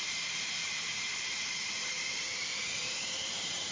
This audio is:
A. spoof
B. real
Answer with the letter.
A